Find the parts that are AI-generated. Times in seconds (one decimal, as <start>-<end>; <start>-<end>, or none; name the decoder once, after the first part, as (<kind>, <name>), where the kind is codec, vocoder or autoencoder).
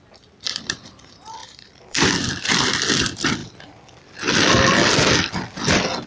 1.4-2.4 (vocoder, BigVGAN v2); 3.4-5.1